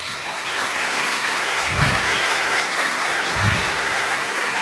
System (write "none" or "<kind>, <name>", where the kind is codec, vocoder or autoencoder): codec, SNAC